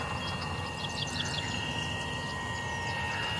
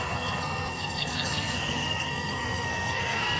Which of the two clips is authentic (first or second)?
first